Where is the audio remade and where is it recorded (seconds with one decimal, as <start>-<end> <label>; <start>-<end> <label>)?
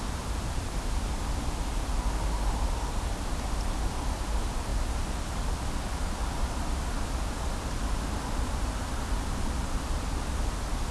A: 0.0-10.9 recorded